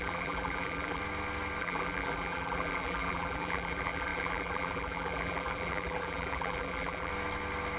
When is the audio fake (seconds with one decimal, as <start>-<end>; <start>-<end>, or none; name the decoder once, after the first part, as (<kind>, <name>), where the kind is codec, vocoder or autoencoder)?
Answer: 0.0-1.0 (vocoder, BigVGAN v2); 1.6-7.1